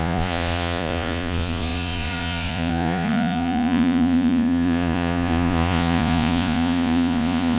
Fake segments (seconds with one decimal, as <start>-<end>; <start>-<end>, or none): 0.0-7.6